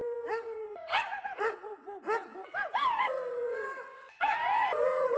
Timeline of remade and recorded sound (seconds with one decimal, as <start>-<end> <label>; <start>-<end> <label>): 0.0-5.2 remade